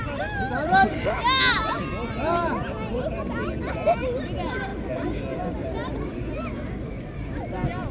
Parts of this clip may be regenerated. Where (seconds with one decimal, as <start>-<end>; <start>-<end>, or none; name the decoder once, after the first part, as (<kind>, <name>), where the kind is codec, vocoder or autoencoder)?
none